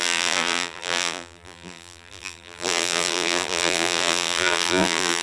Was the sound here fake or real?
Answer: fake